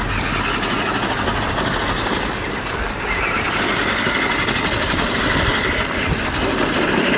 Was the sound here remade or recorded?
recorded